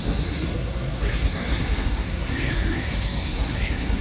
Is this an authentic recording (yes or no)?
no